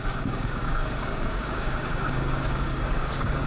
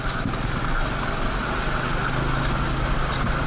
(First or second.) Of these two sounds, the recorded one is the second